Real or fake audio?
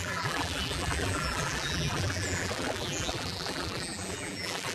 fake